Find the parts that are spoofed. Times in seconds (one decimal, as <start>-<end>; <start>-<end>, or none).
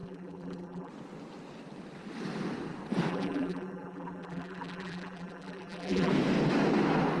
0.0-0.9; 3.1-6.1